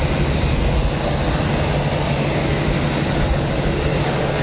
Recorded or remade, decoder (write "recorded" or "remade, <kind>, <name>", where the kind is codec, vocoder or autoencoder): recorded